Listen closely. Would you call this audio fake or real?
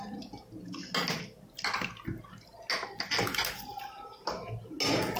real